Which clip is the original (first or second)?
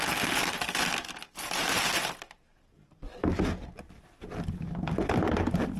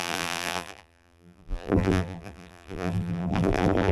first